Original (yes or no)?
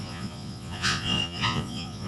no